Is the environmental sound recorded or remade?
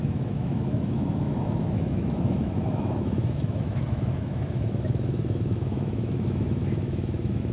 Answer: remade